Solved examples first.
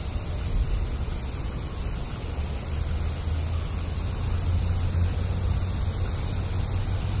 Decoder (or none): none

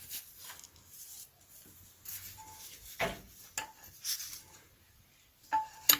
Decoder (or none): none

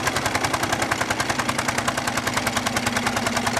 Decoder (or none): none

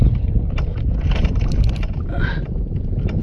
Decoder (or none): none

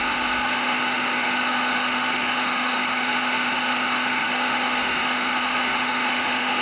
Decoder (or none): autoencoder, DAC-VAE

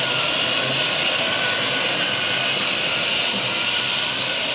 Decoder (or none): none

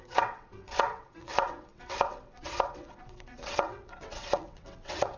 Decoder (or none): vocoder, WaveNeXt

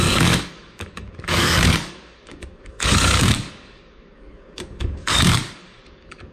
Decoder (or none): codec, DAC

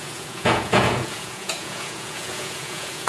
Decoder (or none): vocoder, Vocos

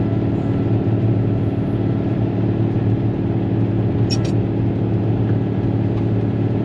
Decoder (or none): none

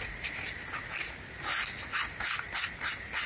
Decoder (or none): none